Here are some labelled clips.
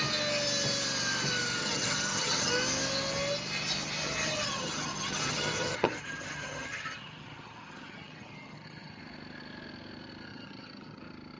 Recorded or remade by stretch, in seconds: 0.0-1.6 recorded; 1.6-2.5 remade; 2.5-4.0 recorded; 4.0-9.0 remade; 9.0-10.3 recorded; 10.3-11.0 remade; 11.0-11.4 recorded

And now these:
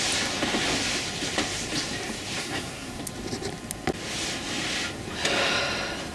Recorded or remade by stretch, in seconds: 0.0-2.4 recorded; 2.4-3.0 remade; 3.0-6.1 recorded